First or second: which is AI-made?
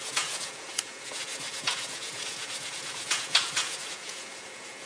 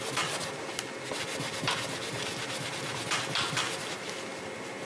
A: first